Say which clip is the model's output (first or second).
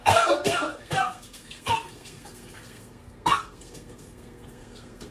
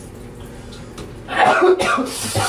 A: first